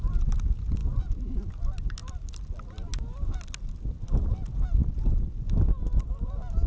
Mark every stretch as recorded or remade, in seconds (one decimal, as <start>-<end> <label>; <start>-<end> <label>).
0.0-6.7 recorded

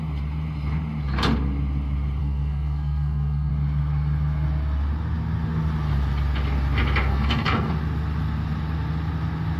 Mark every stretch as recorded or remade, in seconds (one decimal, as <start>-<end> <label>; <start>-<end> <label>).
0.0-2.2 recorded; 2.2-3.5 remade; 3.5-7.1 recorded; 7.1-7.7 remade; 7.7-9.6 recorded

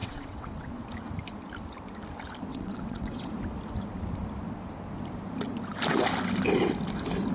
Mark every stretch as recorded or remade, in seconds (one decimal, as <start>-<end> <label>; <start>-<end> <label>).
0.0-0.7 remade; 0.7-2.5 recorded; 2.5-3.3 remade; 3.3-7.3 recorded

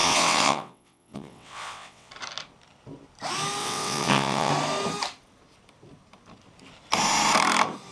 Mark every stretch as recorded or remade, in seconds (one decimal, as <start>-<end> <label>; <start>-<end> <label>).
0.0-2.1 remade; 2.1-3.6 recorded; 3.6-4.5 remade; 4.5-7.9 recorded

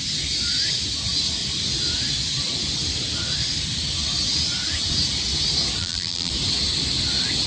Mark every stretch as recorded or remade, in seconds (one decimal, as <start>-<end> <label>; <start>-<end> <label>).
0.0-5.8 recorded; 5.8-6.3 remade; 6.3-7.5 recorded

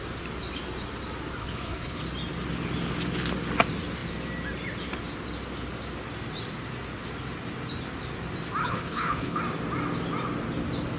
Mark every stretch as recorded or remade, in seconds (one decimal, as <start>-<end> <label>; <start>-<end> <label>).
0.0-1.4 recorded; 1.4-2.0 remade; 2.0-8.6 recorded; 8.6-9.4 remade; 9.4-11.0 recorded

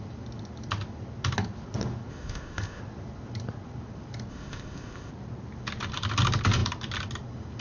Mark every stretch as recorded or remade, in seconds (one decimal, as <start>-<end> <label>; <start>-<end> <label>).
0.0-2.1 recorded; 2.1-2.8 remade; 2.8-4.3 recorded; 4.3-5.1 remade; 5.1-7.6 recorded